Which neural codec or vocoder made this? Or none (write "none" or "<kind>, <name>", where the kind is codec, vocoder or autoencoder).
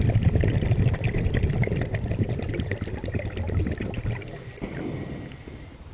vocoder, BigVGAN v2